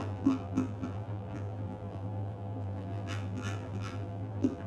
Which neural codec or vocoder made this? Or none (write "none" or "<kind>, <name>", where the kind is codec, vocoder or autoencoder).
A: vocoder, BigVGAN v2